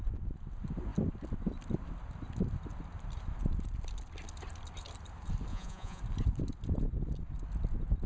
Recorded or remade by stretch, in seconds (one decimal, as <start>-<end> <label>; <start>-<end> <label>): 0.0-5.5 recorded; 5.5-6.0 remade; 6.0-8.1 recorded